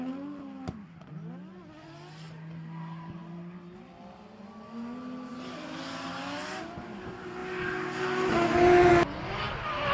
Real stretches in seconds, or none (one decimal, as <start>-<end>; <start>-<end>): 0.0-9.9